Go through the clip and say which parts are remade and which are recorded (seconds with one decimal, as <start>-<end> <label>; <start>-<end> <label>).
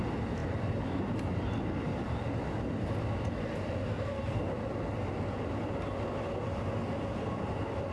0.0-3.9 recorded; 3.9-4.4 remade; 4.4-7.9 recorded